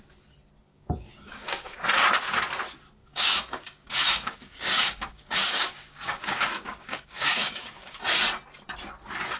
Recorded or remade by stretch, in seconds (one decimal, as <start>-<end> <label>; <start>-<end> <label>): 0.0-0.7 recorded; 0.7-1.8 remade; 1.8-3.1 recorded; 3.1-8.0 remade; 8.0-9.4 recorded